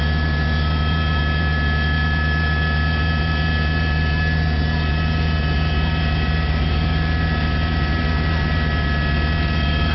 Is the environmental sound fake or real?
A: real